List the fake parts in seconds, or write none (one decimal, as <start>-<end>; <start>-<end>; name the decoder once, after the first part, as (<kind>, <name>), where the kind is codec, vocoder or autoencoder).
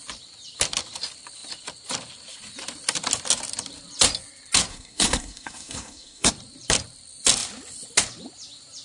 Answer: 4.7-6.3 (codec, SNAC)